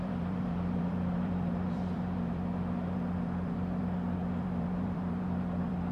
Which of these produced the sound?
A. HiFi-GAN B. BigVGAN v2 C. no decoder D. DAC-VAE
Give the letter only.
B